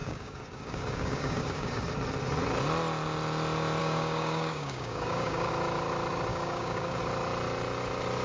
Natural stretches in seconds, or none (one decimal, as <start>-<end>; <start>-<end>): 1.8-3.8; 5.5-6.3; 7.0-8.2